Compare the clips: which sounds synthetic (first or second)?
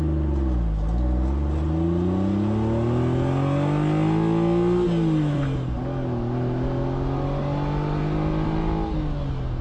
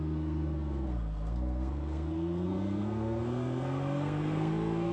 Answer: second